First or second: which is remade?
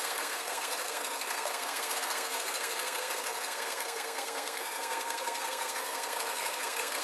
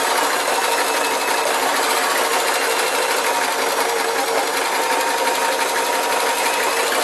first